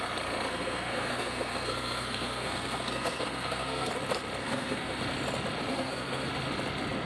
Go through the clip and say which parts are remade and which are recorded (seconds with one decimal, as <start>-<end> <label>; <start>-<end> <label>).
0.0-0.5 recorded; 0.5-3.9 remade; 3.9-4.4 recorded; 4.4-5.0 remade; 5.0-5.7 recorded; 5.7-6.3 remade; 6.3-7.1 recorded